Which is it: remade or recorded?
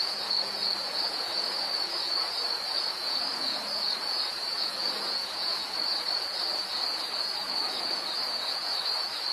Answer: remade